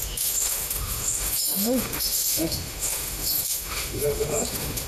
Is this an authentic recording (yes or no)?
no